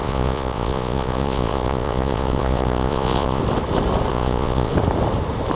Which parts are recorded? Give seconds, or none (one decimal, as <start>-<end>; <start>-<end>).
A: 3.4-4.1; 4.7-5.6